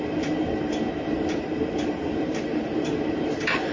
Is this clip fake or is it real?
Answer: fake